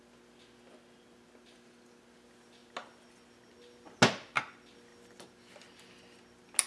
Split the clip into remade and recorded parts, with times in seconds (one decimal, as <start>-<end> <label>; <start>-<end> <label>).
0.0-6.7 recorded